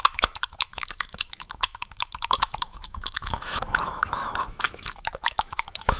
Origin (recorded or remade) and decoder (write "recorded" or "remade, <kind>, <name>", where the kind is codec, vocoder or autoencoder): remade, autoencoder, DAC-VAE